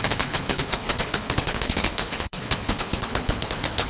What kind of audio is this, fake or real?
fake